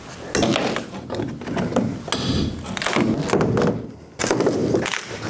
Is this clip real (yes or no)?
yes